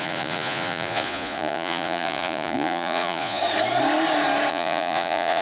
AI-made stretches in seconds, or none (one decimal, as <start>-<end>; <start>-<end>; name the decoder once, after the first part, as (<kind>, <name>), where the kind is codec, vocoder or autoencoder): 0.0-3.4 (vocoder, Vocos); 4.5-5.4